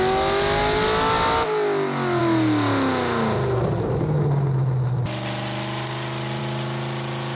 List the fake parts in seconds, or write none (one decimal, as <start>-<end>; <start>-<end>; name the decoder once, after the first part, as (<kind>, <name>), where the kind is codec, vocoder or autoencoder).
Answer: none